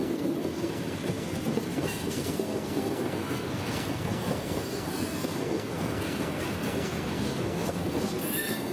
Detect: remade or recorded remade